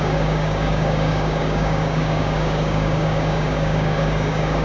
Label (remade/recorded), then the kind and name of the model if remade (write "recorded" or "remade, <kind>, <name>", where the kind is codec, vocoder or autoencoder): remade, codec, DAC